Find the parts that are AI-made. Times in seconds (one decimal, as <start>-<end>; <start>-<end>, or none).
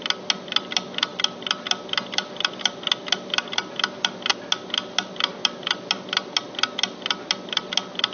none